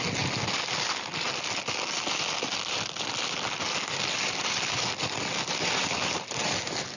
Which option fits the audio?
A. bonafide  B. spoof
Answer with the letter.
A